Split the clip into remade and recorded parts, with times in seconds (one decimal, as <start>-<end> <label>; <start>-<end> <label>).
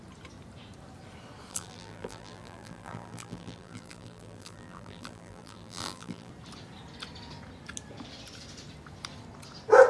0.0-1.5 recorded; 1.5-6.3 remade; 6.3-9.9 recorded